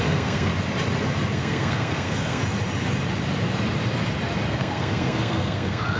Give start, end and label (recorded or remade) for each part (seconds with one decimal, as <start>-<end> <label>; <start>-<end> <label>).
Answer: 0.0-0.5 remade; 0.5-1.3 recorded; 1.3-2.4 remade; 2.4-4.5 recorded; 4.5-6.0 remade